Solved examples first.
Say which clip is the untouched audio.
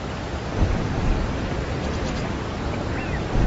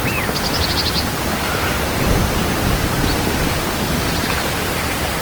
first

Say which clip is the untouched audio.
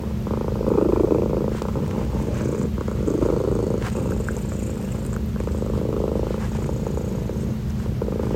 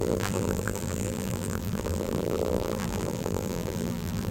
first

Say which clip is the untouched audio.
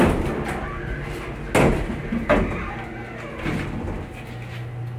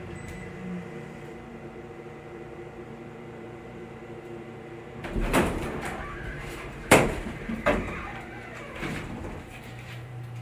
first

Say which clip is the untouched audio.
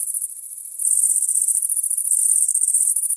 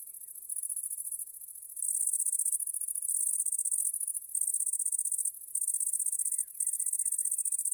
second